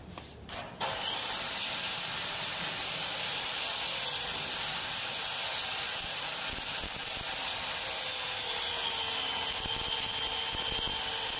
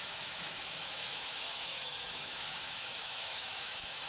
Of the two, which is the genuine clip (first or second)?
first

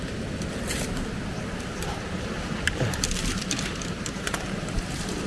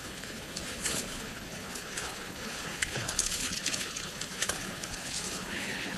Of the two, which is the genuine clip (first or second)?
first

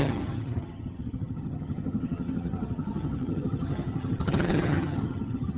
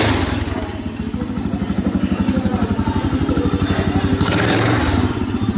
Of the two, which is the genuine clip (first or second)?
second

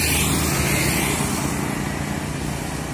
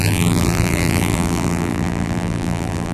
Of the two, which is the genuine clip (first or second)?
first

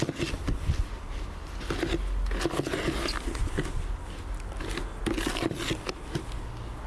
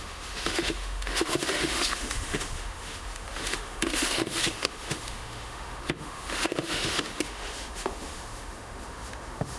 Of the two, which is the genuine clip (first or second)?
first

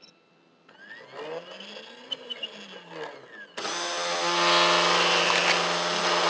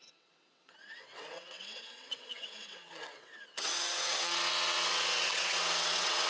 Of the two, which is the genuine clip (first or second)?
first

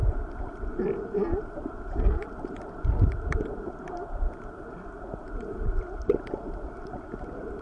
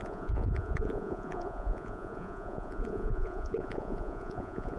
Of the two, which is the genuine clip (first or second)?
first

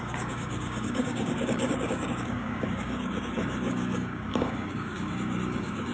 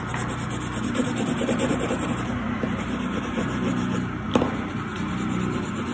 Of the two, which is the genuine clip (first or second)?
second